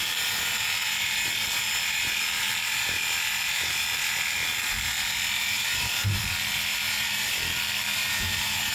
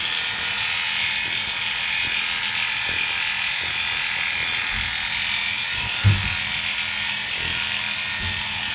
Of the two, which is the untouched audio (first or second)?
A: second